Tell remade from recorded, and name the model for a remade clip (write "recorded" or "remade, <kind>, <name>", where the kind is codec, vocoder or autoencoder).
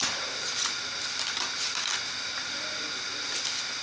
recorded